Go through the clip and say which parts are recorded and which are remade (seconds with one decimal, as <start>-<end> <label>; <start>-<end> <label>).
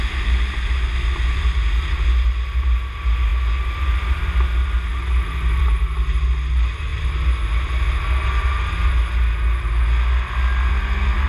0.0-11.3 recorded